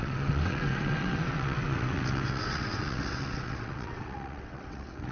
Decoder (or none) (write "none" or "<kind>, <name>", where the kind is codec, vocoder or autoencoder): vocoder, WaveNeXt